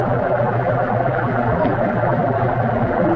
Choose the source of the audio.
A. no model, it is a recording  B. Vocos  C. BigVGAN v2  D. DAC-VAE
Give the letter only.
C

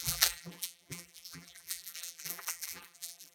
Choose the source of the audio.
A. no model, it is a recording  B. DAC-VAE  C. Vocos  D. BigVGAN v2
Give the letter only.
D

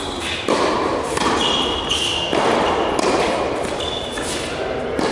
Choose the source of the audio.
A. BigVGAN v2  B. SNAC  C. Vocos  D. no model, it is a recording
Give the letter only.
D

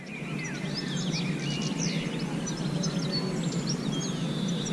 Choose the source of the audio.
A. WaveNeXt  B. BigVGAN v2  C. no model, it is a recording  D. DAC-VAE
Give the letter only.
C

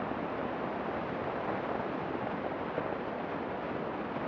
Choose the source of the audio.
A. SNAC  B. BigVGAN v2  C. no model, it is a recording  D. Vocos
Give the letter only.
C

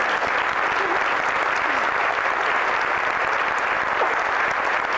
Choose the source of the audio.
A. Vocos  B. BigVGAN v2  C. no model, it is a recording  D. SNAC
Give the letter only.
C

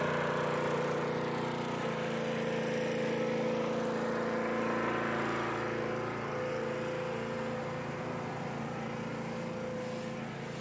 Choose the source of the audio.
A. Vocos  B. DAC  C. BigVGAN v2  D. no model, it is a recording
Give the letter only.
D